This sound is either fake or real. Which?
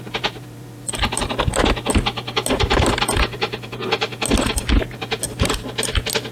real